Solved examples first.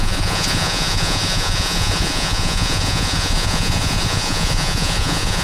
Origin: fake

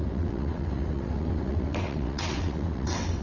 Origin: fake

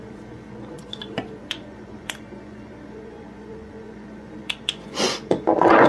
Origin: fake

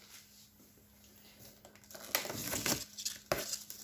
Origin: real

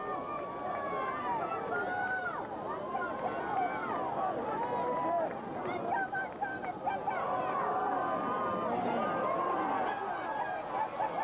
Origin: real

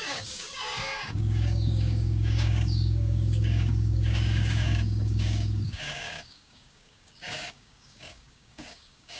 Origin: fake